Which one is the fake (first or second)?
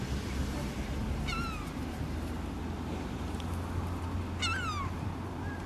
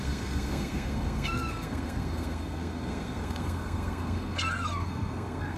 second